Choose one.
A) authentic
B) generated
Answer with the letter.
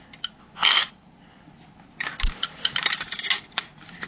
A